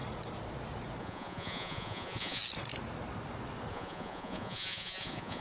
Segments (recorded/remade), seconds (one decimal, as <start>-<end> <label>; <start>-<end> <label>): 0.0-1.0 recorded; 1.0-2.4 remade; 2.4-3.7 recorded; 3.7-5.4 remade